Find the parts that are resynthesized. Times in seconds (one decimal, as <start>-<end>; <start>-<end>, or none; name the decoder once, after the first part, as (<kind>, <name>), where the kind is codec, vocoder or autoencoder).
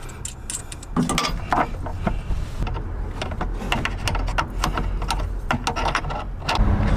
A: 1.9-3.4 (vocoder, BigVGAN v2)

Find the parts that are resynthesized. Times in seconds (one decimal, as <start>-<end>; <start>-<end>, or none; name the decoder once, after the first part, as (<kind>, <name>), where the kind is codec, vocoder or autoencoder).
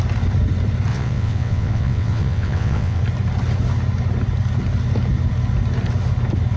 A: 0.9-3.0 (vocoder, WaveNeXt)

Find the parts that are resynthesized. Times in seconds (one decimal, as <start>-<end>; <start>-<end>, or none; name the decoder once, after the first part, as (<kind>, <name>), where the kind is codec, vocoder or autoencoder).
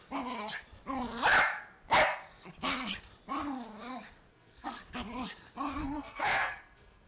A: 4.3-4.8 (codec, SNAC); 5.8-7.1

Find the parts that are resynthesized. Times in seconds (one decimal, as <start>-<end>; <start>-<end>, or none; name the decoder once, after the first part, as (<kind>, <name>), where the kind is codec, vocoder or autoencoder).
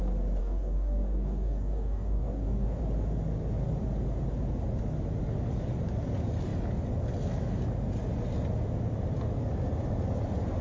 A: 0.4-2.8 (codec, DAC)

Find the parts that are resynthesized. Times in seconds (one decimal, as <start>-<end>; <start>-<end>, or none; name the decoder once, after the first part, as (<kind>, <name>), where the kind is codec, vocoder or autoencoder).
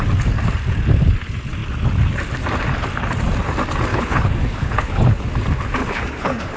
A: 3.9-5.2 (codec, HILCodec); 5.8-6.6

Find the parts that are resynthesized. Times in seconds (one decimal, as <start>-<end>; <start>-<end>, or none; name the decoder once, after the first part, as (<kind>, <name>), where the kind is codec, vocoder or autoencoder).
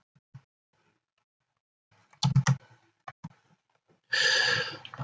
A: none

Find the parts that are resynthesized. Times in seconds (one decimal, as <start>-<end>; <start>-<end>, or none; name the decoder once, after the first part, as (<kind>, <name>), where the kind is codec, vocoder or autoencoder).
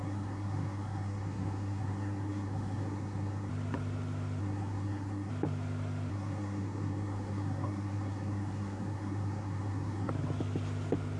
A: 0.0-3.5 (codec, SNAC); 4.4-5.3; 6.1-10.1